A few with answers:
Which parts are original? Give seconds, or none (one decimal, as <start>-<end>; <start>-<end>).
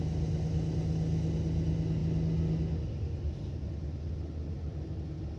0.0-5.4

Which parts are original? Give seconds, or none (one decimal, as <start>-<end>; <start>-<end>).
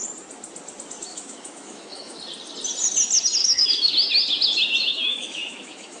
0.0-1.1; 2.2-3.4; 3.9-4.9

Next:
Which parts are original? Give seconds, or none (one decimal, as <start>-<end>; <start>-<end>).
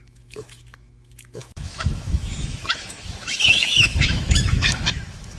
none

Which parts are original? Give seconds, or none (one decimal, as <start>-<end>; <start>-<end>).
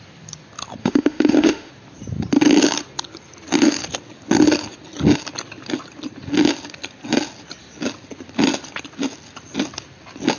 0.0-0.8; 1.7-10.4